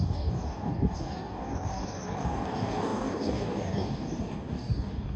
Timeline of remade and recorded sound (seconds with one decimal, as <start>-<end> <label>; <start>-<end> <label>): 0.0-5.2 remade